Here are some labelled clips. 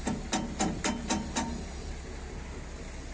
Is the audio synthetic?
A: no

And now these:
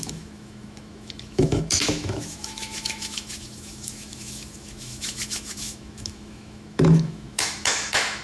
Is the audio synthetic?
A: yes